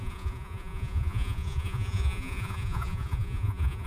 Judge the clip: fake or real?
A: fake